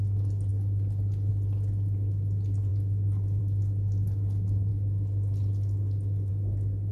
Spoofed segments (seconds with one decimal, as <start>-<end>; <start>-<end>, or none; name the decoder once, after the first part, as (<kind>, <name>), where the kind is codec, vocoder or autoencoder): none